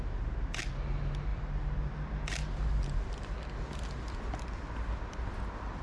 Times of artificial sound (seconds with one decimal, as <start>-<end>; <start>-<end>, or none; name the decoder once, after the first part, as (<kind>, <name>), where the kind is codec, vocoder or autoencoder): 1.3-1.9 (vocoder, BigVGAN v2); 2.4-4.2